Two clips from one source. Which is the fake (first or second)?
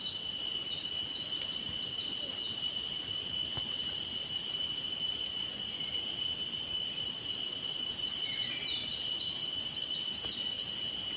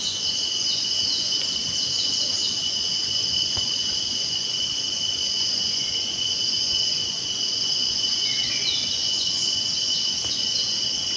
second